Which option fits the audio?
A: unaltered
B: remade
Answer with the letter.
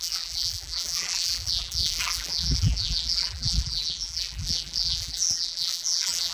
B